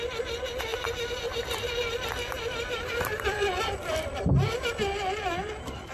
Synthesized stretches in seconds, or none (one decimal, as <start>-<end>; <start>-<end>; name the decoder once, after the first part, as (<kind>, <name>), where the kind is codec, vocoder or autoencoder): 0.7-4.2 (vocoder, BigVGAN v2)